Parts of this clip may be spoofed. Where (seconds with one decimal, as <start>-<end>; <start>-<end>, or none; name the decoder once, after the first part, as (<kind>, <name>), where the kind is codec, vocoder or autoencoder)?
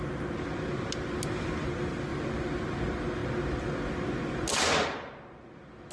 none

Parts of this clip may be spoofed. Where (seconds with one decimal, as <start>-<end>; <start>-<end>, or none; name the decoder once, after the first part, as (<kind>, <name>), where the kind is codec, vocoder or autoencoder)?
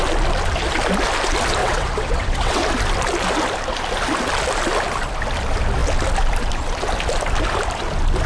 1.6-2.6 (vocoder, WaveNeXt)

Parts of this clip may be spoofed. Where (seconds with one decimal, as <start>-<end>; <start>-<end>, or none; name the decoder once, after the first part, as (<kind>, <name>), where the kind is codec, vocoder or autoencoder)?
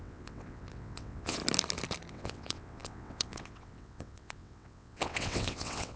0.0-1.4 (vocoder, WaveNeXt); 2.1-6.0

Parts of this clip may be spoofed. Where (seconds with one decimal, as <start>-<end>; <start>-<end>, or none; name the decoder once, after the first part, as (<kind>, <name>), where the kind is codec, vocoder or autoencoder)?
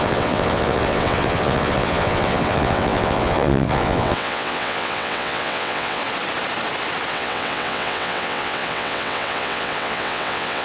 0.0-6.0 (vocoder, WaveNeXt); 7.1-10.6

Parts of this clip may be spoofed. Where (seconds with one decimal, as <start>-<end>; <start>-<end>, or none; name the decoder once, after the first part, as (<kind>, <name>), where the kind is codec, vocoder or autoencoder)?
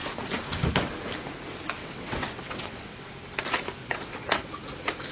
1.8-3.1 (vocoder, WaveNeXt); 3.8-4.5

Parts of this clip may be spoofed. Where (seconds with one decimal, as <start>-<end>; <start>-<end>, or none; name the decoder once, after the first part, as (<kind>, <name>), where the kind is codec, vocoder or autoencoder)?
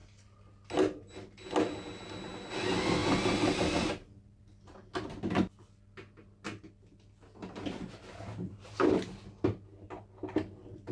none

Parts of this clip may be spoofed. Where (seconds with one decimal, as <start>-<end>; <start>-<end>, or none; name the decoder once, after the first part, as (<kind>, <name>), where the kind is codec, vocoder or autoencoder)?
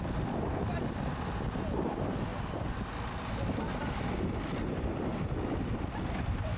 none